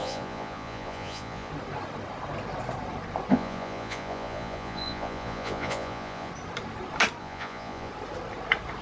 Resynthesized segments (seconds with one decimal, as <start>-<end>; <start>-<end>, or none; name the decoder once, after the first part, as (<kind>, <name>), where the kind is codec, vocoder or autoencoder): 0.0-1.5 (vocoder, Vocos); 3.3-6.3; 7.2-7.9